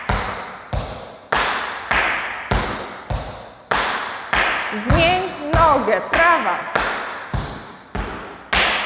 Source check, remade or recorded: recorded